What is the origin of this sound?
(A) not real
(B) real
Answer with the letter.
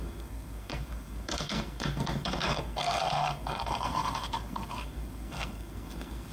A